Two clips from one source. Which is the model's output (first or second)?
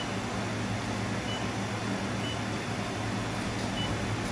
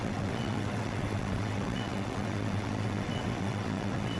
second